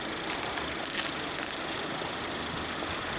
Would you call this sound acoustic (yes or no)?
yes